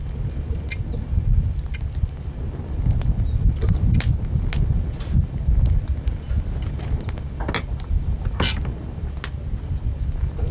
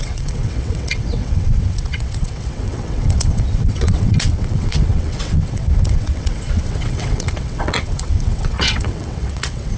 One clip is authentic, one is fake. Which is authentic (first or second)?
first